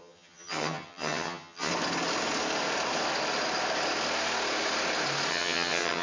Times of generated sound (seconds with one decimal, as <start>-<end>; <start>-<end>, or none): 0.0-1.7; 5.3-6.0

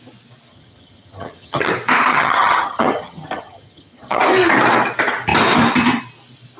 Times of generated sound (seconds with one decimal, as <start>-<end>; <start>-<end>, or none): 0.5-1.7; 2.1-4.2

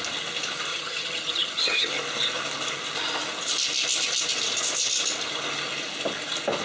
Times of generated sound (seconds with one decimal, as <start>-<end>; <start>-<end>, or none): 0.7-1.9

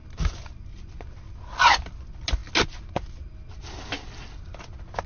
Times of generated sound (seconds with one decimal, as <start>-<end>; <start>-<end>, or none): none

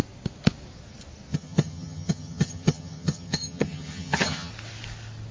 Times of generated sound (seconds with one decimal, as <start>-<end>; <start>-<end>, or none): 1.3-4.5

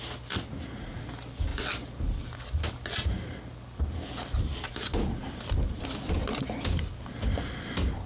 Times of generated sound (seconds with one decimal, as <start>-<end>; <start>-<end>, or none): none